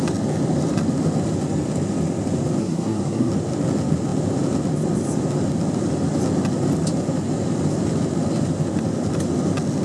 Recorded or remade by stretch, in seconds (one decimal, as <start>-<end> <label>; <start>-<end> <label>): 0.0-2.6 recorded; 2.6-3.3 remade; 3.3-9.8 recorded